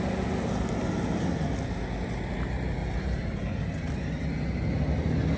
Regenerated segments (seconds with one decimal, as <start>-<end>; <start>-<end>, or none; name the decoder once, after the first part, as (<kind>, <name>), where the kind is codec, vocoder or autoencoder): 2.8-3.6 (vocoder, BigVGAN v2)